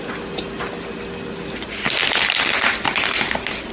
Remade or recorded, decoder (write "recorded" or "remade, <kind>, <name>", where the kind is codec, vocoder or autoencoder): recorded